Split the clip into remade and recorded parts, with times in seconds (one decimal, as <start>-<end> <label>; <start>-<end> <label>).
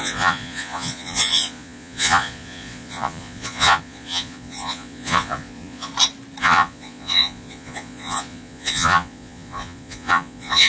0.0-5.9 remade; 5.9-6.4 recorded; 6.4-10.7 remade